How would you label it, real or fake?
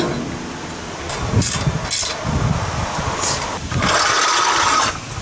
real